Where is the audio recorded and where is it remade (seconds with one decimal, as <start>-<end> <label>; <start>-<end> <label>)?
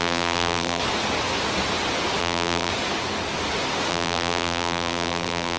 0.0-0.8 remade; 0.8-2.2 recorded; 2.2-2.7 remade; 2.7-3.9 recorded; 3.9-5.6 remade